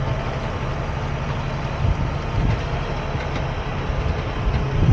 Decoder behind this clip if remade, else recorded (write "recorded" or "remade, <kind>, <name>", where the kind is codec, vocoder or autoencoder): recorded